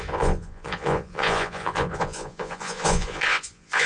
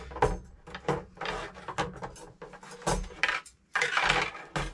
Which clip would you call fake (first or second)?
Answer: first